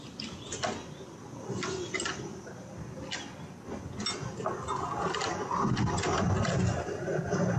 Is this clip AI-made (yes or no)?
no